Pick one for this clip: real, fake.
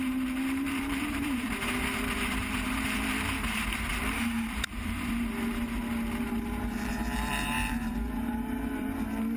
fake